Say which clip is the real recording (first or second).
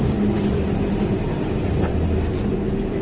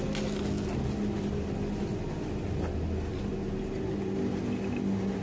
second